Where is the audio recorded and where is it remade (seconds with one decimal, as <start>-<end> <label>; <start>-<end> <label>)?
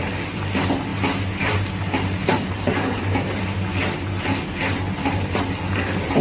0.0-0.9 recorded; 0.9-3.4 remade; 3.4-6.2 recorded